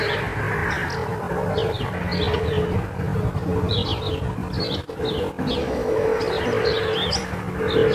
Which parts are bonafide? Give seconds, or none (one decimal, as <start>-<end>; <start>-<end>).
0.0-5.6; 6.2-7.9